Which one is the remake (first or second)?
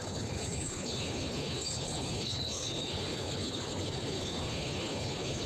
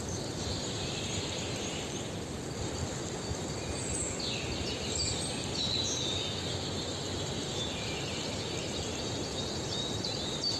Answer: first